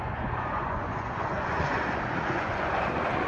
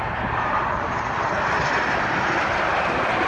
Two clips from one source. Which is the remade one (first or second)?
first